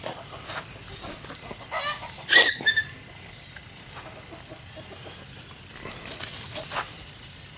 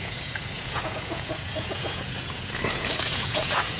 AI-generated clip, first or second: second